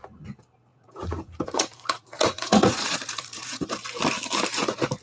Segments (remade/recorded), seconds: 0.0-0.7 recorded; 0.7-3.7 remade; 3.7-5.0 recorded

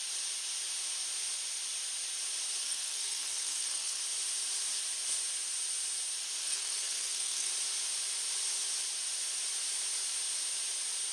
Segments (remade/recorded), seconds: 0.0-2.6 recorded; 2.6-4.0 remade; 4.0-6.4 recorded; 6.4-7.5 remade; 7.5-11.1 recorded

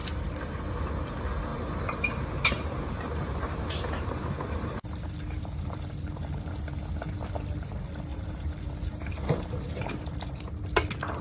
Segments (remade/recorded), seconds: 0.0-1.5 recorded; 1.5-6.5 remade; 6.5-8.1 recorded; 8.1-10.5 remade; 10.5-11.2 recorded

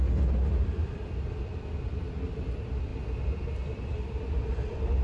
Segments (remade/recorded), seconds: 0.0-2.9 remade; 2.9-4.5 recorded; 4.5-5.0 remade

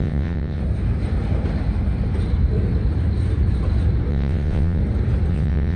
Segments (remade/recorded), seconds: 0.0-0.6 remade; 0.6-4.1 recorded; 4.1-4.8 remade; 4.8-5.3 recorded; 5.3-5.8 remade